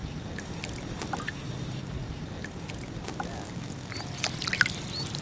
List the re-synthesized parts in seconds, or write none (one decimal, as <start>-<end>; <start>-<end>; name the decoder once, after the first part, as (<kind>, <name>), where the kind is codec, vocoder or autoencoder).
none